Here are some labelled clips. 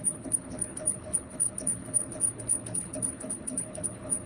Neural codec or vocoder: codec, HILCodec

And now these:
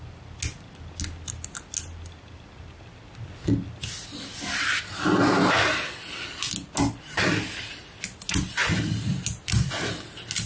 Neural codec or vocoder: none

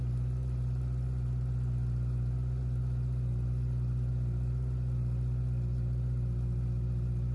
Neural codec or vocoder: none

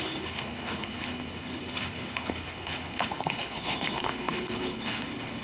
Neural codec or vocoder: codec, HILCodec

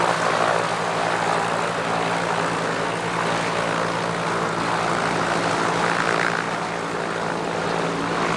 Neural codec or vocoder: none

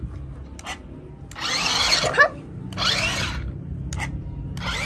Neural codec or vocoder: none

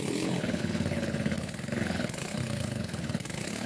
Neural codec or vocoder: codec, HILCodec